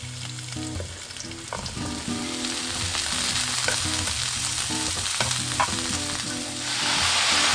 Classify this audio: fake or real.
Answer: real